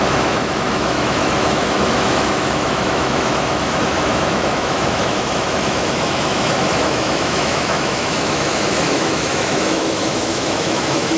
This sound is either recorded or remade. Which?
remade